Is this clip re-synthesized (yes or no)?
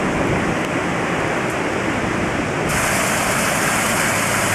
no